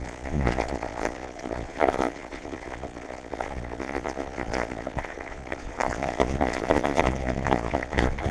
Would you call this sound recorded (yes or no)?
no